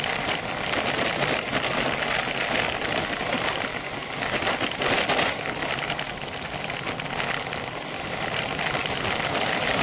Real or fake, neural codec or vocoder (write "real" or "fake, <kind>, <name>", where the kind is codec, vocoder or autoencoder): real